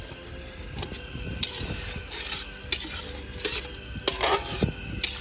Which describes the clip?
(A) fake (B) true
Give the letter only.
B